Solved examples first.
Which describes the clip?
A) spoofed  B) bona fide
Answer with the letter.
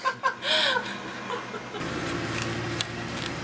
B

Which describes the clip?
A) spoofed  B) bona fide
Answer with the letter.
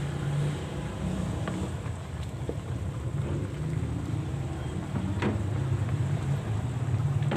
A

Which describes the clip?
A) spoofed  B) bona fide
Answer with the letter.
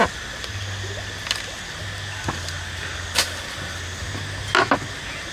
B